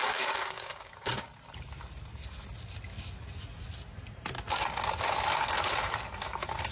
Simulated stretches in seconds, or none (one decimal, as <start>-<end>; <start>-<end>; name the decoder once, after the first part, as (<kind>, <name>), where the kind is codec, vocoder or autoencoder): 0.0-1.3 (codec, DAC)